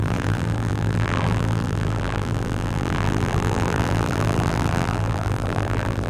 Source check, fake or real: fake